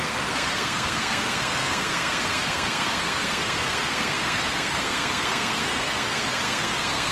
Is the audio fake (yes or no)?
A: yes